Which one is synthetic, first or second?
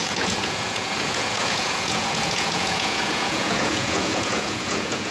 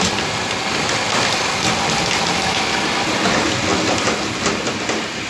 first